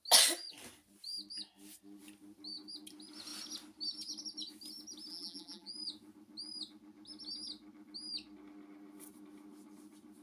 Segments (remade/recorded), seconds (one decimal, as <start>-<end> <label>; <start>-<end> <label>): 0.0-5.1 recorded; 5.1-5.7 remade; 5.7-10.2 recorded